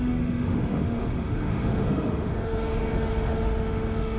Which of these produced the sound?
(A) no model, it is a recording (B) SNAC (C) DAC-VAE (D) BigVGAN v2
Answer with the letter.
C